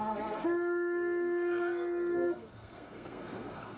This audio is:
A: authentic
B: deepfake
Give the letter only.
B